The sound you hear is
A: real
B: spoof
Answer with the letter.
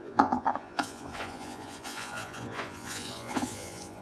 B